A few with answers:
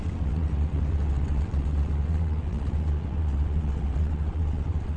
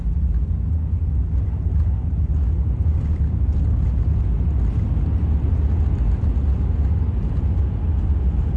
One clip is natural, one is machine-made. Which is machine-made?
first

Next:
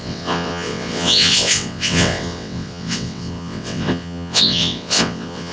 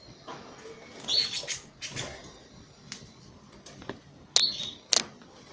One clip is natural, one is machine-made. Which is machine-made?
first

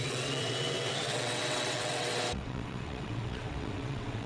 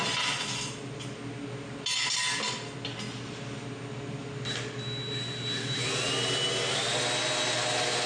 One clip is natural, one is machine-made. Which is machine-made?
first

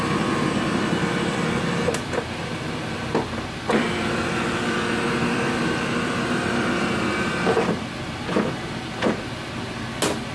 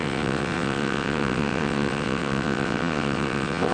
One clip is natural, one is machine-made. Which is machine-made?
second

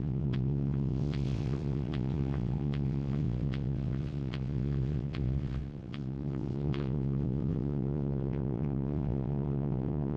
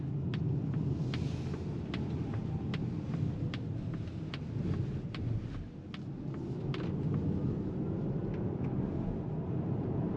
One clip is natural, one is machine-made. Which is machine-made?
first